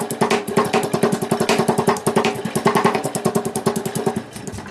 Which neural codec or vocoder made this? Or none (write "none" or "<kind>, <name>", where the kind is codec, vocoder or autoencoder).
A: none